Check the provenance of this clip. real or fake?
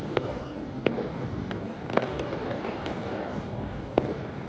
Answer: fake